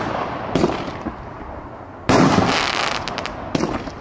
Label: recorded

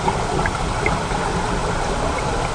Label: recorded